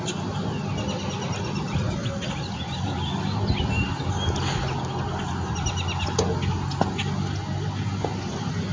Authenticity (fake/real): real